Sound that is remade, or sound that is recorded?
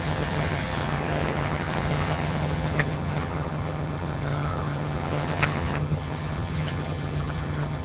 remade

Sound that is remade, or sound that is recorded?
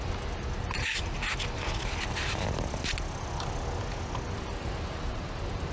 recorded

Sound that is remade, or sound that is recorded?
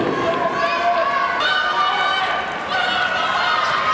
recorded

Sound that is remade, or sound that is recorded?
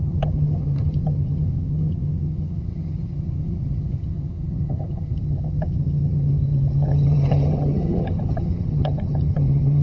remade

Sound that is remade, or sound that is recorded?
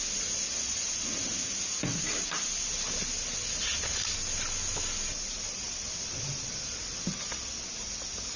recorded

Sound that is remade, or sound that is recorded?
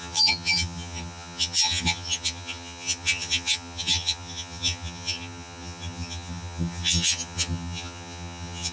remade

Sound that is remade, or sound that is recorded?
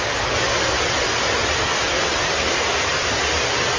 recorded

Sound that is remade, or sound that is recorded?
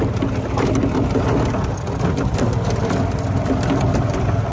recorded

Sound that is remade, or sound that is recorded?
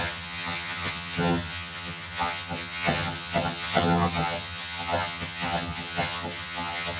remade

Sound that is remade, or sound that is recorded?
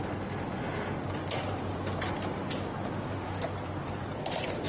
recorded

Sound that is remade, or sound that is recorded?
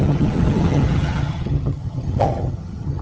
remade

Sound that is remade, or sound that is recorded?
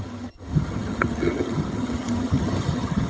remade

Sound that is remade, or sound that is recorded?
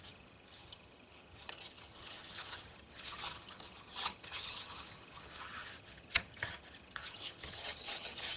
remade